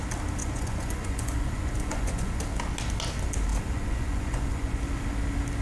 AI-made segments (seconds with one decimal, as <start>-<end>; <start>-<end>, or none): 0.4-2.4; 3.5-4.8